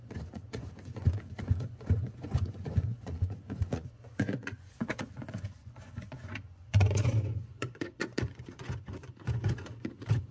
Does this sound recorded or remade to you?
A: remade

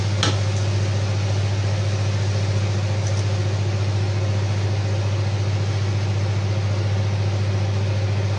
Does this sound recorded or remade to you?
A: recorded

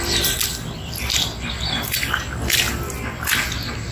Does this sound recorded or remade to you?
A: recorded